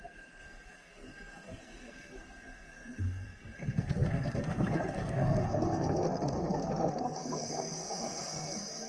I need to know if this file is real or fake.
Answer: fake